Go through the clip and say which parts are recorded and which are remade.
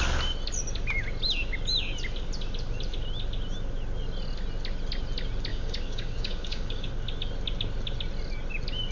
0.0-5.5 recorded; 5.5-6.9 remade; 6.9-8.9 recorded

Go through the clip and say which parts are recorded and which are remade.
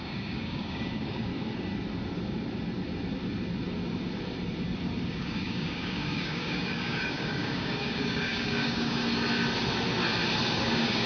0.0-1.3 remade; 1.3-5.1 recorded; 5.1-9.0 remade; 9.0-10.6 recorded; 10.6-11.1 remade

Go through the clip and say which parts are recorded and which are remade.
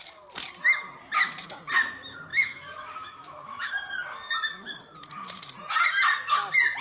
0.0-2.3 recorded; 2.3-3.7 remade; 3.7-6.8 recorded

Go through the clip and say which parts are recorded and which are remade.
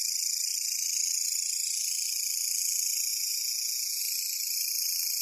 0.0-3.1 recorded; 3.1-4.0 remade; 4.0-5.2 recorded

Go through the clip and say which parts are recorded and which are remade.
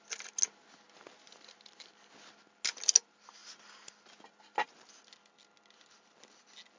0.0-6.8 recorded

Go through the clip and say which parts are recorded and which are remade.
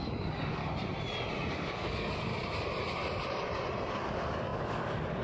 0.0-0.6 remade; 0.6-1.5 recorded; 1.5-2.3 remade; 2.3-3.9 recorded; 3.9-5.2 remade